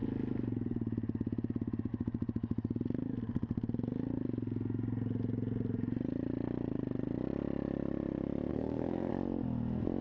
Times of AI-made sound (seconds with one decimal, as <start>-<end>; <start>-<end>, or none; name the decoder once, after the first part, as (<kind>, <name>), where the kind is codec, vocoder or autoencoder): 8.5-9.1 (codec, SNAC)